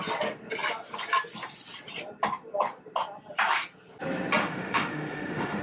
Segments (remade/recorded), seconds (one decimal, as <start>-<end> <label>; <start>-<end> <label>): 0.0-4.4 recorded; 4.4-5.6 remade